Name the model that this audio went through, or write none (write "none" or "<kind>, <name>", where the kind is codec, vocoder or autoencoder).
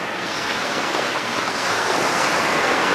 codec, SNAC